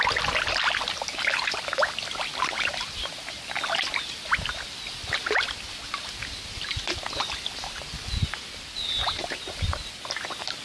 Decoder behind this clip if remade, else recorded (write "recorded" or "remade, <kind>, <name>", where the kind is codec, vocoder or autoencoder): recorded